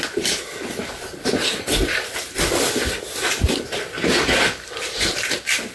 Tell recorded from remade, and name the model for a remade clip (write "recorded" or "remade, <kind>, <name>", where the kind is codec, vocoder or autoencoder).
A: recorded